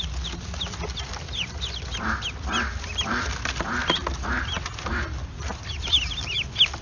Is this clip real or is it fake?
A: real